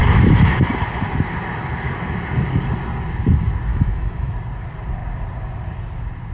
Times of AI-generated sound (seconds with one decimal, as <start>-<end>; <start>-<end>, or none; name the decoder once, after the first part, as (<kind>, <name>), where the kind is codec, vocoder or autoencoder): 0.0-0.6 (autoencoder, DAC-VAE); 3.7-4.3